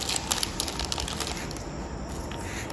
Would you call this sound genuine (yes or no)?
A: yes